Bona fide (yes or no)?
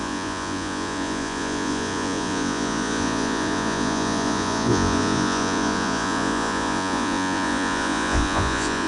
no